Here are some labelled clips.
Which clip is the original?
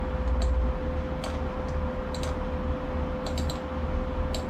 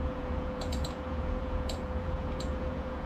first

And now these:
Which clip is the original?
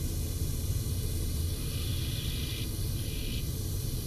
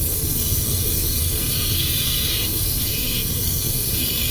first